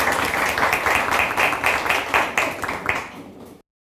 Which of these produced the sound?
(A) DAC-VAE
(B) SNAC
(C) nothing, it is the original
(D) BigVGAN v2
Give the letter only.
C